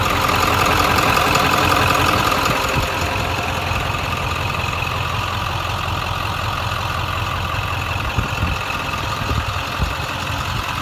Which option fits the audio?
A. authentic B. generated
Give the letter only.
A